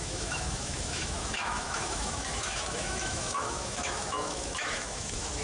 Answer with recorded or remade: remade